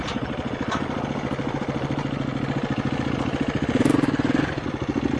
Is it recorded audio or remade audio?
recorded